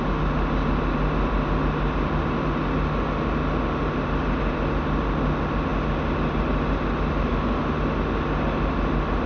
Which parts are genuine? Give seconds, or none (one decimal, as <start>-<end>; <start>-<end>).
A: 0.0-9.3